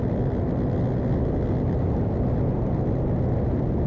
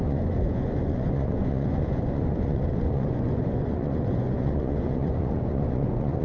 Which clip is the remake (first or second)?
second